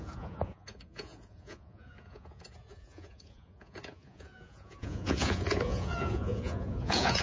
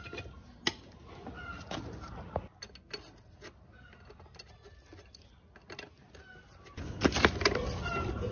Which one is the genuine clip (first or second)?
second